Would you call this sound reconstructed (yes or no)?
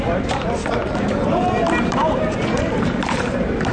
no